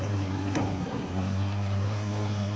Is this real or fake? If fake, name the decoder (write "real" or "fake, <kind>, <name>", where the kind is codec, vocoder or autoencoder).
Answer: fake, codec, SNAC